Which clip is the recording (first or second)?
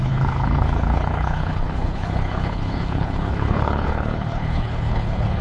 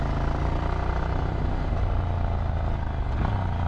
second